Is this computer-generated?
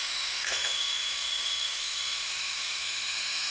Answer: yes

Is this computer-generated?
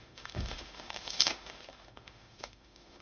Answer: yes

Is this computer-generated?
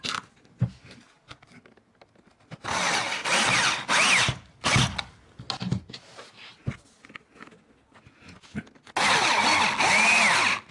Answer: no